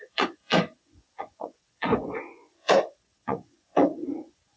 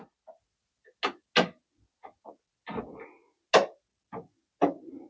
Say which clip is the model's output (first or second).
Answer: first